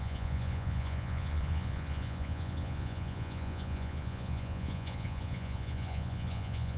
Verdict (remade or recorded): remade